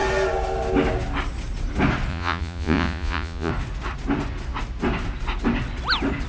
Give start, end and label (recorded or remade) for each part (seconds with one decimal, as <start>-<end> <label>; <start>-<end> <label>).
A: 0.0-2.1 recorded; 2.1-3.5 remade; 3.5-6.3 recorded